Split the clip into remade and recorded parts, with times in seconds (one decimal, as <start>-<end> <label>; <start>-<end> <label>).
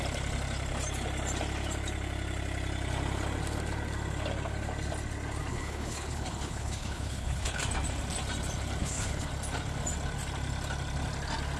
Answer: 0.0-5.5 recorded; 5.5-7.6 remade; 7.6-8.8 recorded; 8.8-9.3 remade; 9.3-11.6 recorded